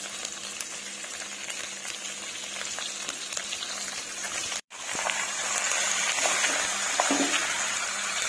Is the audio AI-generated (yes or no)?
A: no